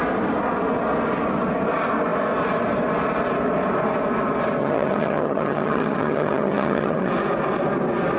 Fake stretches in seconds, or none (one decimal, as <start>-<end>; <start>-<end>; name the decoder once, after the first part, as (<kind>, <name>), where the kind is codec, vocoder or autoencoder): 4.6-7.1 (vocoder, HiFi-GAN)